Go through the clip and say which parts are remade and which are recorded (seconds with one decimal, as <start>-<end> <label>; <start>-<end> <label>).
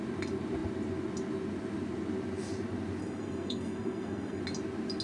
0.0-3.0 recorded; 3.0-4.4 remade; 4.4-5.0 recorded